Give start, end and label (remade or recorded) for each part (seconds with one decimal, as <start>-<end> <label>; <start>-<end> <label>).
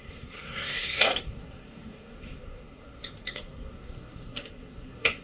0.0-5.2 remade